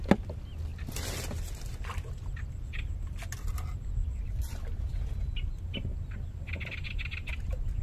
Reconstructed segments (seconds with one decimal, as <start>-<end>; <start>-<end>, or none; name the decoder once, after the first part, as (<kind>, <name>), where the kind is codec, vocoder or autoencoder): none